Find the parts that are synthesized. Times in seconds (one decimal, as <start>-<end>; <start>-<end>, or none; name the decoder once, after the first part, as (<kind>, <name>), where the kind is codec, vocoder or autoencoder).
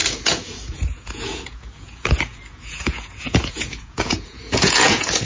0.0-5.3 (vocoder, Vocos)